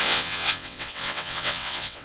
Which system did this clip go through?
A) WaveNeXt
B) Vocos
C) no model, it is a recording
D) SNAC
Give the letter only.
A